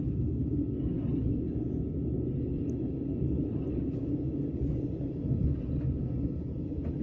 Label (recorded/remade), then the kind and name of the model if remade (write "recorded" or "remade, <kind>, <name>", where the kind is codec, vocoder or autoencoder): remade, vocoder, BigVGAN v2